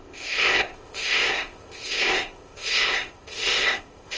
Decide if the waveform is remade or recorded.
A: remade